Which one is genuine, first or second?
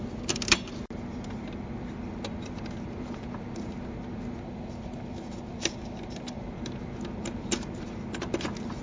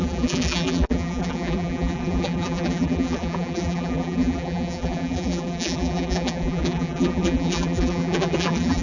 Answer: first